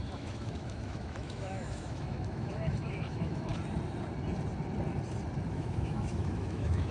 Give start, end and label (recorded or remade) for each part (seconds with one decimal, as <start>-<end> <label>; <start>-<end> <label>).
0.0-3.5 remade; 3.5-5.5 recorded; 5.5-6.9 remade